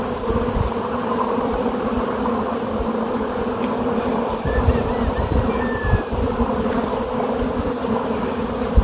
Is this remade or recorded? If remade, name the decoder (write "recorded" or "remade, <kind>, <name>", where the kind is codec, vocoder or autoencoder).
recorded